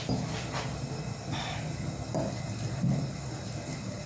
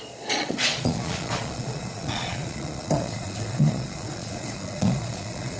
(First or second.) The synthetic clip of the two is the second